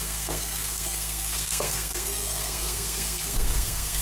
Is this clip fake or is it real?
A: fake